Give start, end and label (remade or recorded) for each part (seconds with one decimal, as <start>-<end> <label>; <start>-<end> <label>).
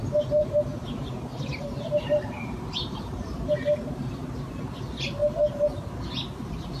0.0-0.4 recorded; 0.4-4.1 remade; 4.1-6.8 recorded